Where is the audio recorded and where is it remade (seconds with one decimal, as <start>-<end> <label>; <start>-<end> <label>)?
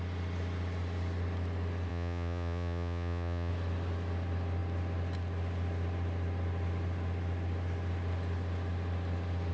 0.0-1.9 recorded; 1.9-3.5 remade; 3.5-9.5 recorded